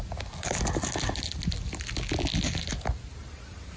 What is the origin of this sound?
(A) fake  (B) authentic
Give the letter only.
B